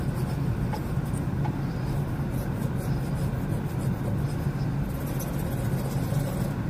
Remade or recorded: recorded